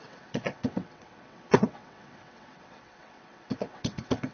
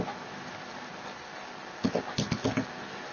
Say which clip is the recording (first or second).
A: second